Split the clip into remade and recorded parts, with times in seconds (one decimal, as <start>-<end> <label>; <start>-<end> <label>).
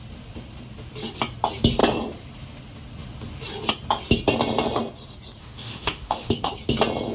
0.0-5.4 recorded; 5.4-6.5 remade; 6.5-7.1 recorded